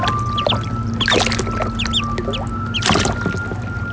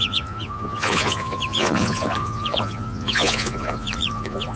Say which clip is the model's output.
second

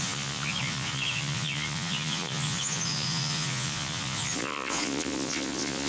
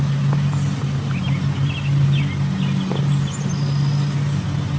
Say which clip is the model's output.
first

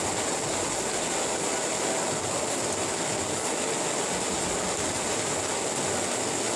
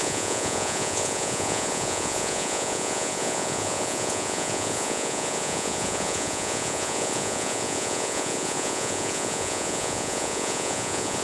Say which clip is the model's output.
second